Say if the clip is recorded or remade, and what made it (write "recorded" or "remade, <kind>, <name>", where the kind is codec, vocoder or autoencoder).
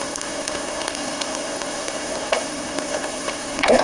remade, codec, SNAC